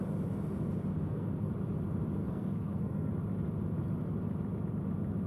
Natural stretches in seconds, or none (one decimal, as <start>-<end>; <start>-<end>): 0.0-0.9; 1.5-2.2; 3.1-5.3